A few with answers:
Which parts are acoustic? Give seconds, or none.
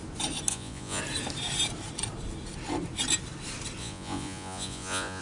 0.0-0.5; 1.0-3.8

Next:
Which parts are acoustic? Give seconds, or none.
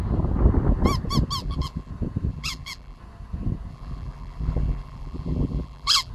0.0-1.4; 1.9-2.3; 3.0-3.7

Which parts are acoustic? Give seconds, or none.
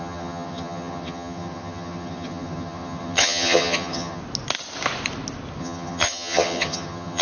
4.2-5.6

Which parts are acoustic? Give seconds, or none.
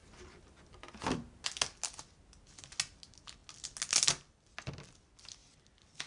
0.0-6.1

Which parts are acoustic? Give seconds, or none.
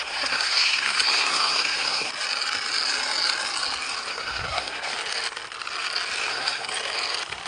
2.1-4.1; 4.9-6.3; 6.7-7.5